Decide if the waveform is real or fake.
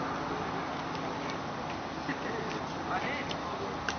real